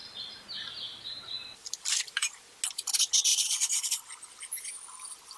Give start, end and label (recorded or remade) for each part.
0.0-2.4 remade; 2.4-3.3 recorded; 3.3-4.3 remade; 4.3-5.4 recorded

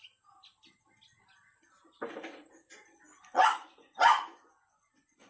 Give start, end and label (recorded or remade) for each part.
0.0-3.2 recorded; 3.2-5.3 remade

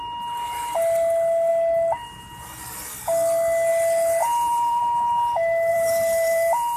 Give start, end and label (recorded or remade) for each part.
0.0-4.2 recorded; 4.2-4.8 remade; 4.8-5.7 recorded; 5.7-6.8 remade

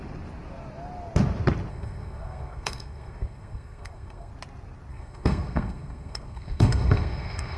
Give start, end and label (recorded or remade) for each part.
0.0-1.7 recorded; 1.7-4.3 remade; 4.3-4.9 recorded; 4.9-7.6 remade

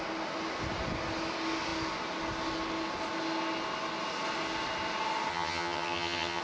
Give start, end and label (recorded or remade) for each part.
0.0-5.3 recorded; 5.3-6.4 remade

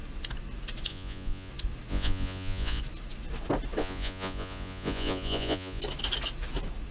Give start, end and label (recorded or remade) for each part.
0.0-0.9 recorded; 0.9-1.5 remade; 1.5-1.9 recorded; 1.9-2.8 remade; 2.8-3.8 recorded; 3.8-5.8 remade; 5.8-6.9 recorded

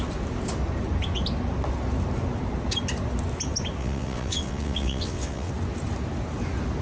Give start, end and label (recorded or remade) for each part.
0.0-3.8 recorded; 3.8-5.5 remade; 5.5-6.8 recorded